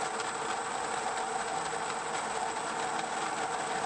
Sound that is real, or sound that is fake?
real